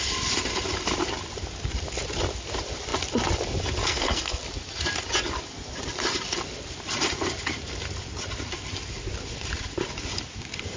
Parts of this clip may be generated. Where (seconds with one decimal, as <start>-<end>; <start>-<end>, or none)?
3.8-4.4